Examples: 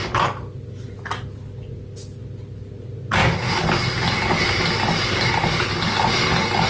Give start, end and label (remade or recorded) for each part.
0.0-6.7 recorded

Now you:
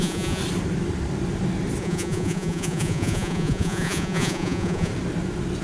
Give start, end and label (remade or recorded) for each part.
0.0-0.4 remade; 0.4-1.8 recorded; 1.8-4.9 remade; 4.9-5.6 recorded